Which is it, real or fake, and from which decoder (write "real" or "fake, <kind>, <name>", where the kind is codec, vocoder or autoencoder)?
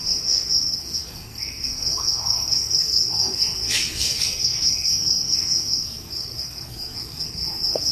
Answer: fake, codec, SNAC